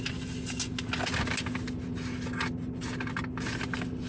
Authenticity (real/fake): real